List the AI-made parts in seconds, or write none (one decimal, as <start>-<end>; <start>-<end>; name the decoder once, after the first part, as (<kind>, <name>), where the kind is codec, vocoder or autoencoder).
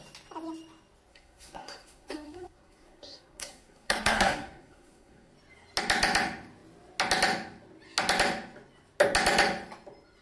1.1-5.3 (codec, SNAC)